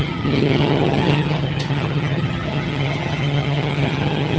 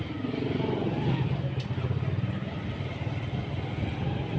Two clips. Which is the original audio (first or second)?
second